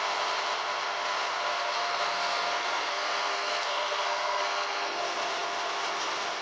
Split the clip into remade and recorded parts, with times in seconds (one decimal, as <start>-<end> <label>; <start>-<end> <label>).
0.0-1.9 recorded; 1.9-5.0 remade; 5.0-6.4 recorded

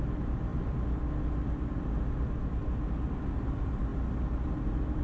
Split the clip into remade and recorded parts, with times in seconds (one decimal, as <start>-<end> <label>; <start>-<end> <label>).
0.0-5.0 recorded

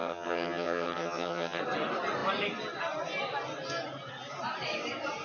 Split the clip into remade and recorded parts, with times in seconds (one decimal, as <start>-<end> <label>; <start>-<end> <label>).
0.0-1.6 remade; 1.6-5.2 recorded

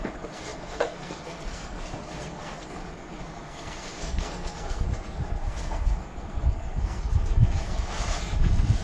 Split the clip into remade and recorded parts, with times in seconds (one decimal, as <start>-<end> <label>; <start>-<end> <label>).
0.0-8.8 remade